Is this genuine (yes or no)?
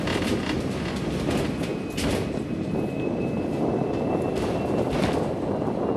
yes